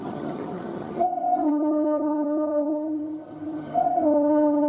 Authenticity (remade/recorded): remade